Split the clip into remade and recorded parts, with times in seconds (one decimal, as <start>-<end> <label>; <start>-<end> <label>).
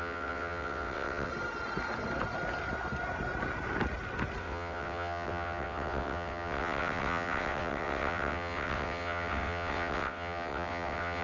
0.0-1.3 remade; 1.3-4.4 recorded; 4.4-11.2 remade